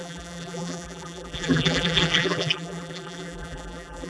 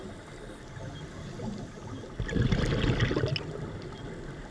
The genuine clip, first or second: second